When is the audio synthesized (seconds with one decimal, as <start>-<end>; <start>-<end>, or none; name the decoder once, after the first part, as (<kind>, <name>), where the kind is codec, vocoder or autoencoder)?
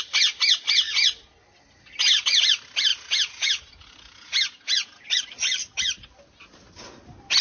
2.9-5.2 (vocoder, Vocos)